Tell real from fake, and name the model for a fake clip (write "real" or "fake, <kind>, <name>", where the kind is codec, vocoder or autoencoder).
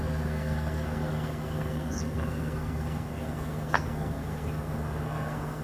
fake, codec, SNAC